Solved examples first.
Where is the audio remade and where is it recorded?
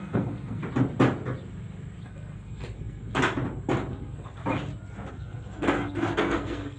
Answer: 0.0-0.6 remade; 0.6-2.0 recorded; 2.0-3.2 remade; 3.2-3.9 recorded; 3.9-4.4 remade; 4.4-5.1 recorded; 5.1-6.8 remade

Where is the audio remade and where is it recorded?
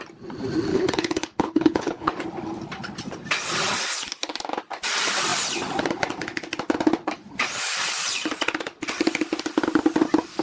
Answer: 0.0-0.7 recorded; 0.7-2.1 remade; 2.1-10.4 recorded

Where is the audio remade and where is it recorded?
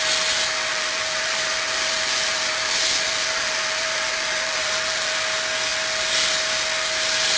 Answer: 0.0-0.7 recorded; 0.7-5.1 remade; 5.1-7.4 recorded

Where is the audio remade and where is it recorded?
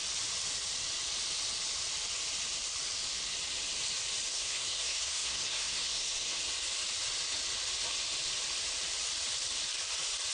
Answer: 0.0-4.3 recorded; 4.3-6.4 remade; 6.4-10.3 recorded